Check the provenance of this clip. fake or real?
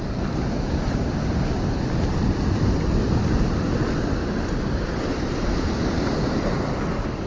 real